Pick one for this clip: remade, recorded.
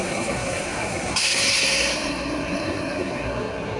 remade